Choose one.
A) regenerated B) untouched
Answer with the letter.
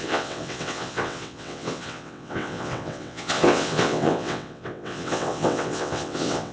A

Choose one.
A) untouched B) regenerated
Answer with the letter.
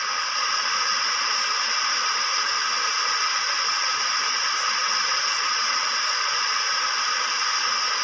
A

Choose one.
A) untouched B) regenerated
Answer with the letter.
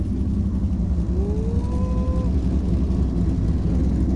A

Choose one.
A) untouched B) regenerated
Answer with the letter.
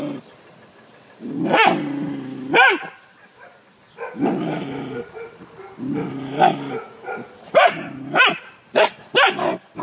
A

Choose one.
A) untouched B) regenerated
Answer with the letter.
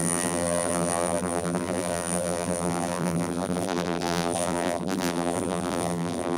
B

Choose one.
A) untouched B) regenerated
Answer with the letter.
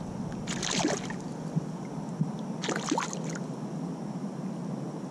A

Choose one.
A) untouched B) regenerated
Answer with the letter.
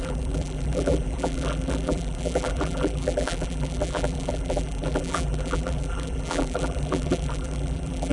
B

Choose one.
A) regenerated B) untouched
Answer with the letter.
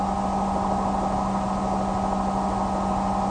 B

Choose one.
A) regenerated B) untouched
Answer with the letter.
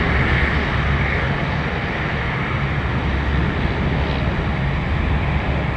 B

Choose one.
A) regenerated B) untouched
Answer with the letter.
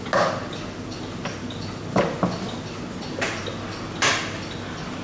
B